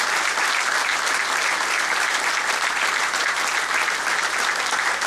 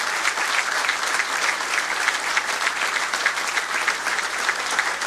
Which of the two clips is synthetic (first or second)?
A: second